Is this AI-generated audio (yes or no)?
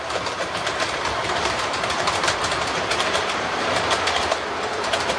yes